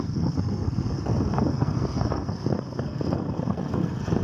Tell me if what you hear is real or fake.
fake